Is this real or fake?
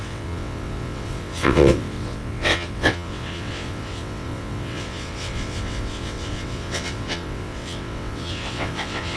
fake